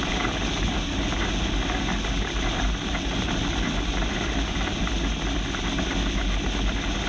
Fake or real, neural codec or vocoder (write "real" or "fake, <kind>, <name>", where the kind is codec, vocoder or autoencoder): real